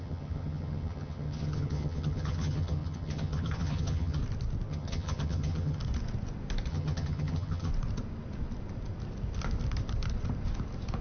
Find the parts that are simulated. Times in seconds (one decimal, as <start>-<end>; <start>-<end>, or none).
0.0-4.2; 4.7-5.8; 6.7-7.7